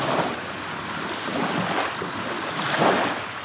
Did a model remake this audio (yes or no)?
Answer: no